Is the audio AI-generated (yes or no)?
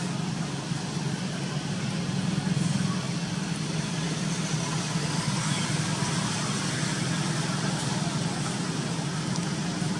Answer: no